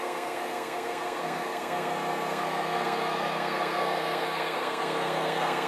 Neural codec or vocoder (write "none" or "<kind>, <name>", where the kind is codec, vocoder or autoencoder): codec, SNAC